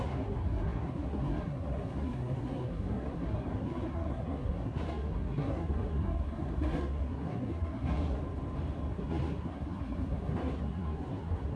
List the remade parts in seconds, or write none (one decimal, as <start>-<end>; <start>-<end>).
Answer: 0.0-8.2; 8.9-11.6